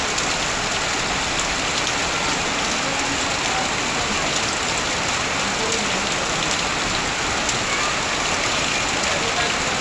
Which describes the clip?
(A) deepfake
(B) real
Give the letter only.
B